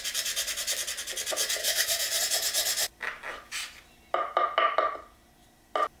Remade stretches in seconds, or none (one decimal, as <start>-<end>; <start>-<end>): 1.6-2.2